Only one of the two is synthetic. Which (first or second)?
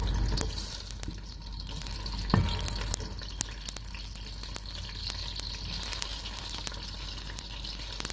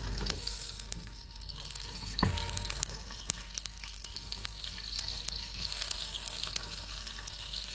second